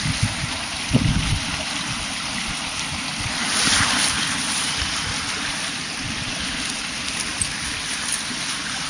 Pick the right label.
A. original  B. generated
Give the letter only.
B